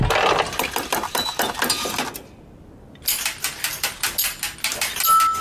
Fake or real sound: real